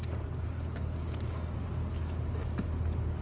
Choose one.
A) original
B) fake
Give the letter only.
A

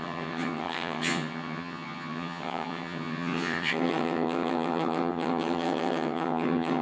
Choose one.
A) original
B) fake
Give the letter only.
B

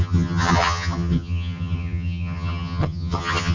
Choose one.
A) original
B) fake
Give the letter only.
B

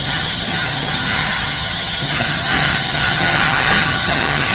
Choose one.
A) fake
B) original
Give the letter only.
A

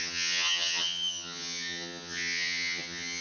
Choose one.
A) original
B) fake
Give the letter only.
B